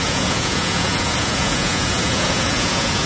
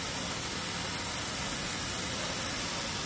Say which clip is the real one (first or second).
second